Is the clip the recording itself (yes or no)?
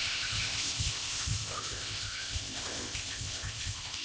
no